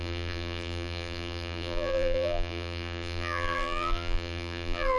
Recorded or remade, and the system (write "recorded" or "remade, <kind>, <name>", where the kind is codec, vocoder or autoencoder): remade, vocoder, BigVGAN v2